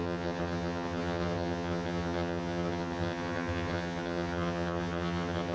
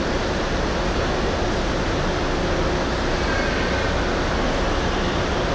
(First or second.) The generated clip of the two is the first